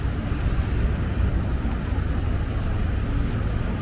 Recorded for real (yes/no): yes